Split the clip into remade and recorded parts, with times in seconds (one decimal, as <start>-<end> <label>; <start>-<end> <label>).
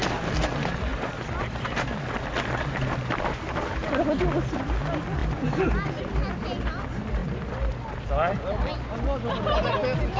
0.0-0.9 recorded; 0.9-2.0 remade; 2.0-10.2 recorded